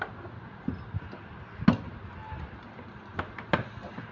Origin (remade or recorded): recorded